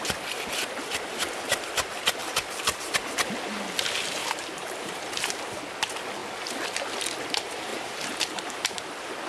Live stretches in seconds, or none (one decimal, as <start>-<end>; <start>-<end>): 0.0-2.2; 3.0-4.2; 5.4-7.7; 8.7-9.3